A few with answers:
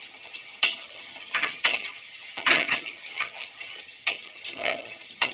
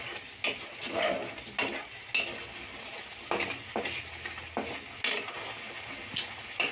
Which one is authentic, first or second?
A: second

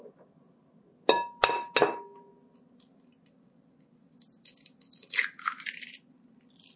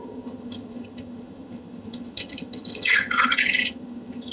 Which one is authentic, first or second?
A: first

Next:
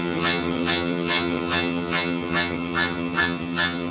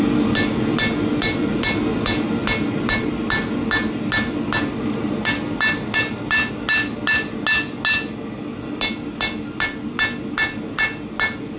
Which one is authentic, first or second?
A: second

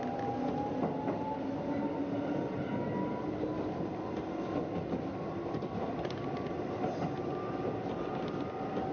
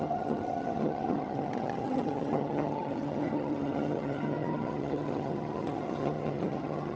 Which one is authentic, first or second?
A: first